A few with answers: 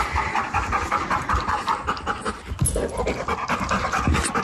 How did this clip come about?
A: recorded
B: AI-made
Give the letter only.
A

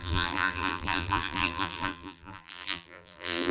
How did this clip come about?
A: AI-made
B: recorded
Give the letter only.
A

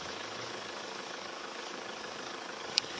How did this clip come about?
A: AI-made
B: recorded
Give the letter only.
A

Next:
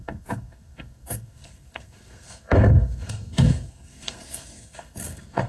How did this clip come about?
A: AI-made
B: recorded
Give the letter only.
A